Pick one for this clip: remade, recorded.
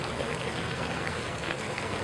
remade